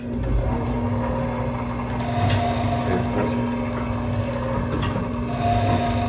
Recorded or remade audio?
recorded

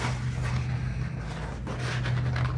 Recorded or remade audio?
recorded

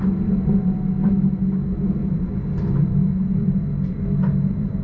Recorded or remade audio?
recorded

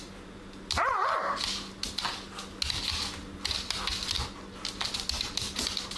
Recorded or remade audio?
recorded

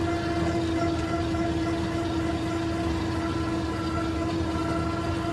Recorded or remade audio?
recorded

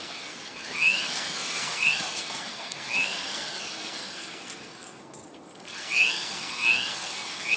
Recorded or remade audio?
remade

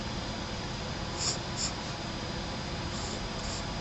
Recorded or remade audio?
recorded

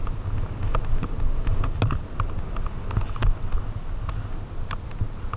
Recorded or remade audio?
recorded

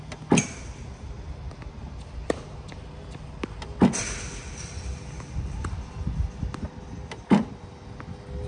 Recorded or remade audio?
recorded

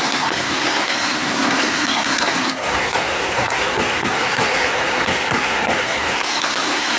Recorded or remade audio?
remade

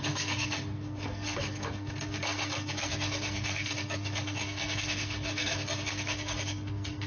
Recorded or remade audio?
remade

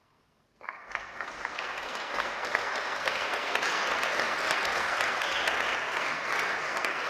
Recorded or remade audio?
remade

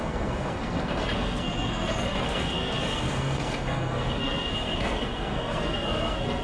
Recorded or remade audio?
remade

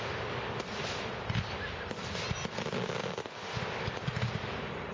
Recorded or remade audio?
recorded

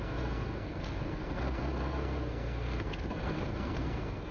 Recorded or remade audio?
remade